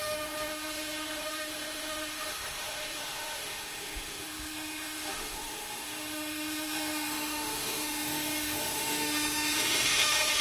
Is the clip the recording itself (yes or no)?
no